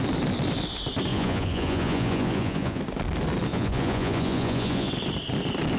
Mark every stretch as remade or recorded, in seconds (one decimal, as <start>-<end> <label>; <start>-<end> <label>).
0.0-1.1 recorded; 1.1-2.8 remade; 2.8-3.5 recorded; 3.5-4.9 remade; 4.9-5.8 recorded